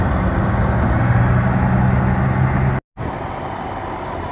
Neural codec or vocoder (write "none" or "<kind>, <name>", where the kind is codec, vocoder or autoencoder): none